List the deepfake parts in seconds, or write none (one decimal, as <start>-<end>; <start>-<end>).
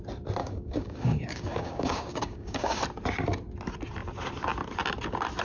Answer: 0.4-2.8